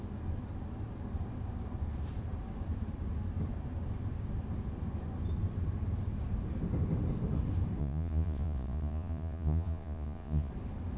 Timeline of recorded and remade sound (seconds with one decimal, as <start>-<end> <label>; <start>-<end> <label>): 0.0-7.8 recorded; 7.8-10.5 remade; 10.5-11.0 recorded